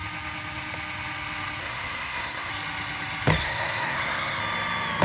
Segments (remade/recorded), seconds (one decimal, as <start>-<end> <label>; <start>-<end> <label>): 0.0-1.6 recorded; 1.6-2.5 remade; 2.5-3.4 recorded; 3.4-4.4 remade; 4.4-5.0 recorded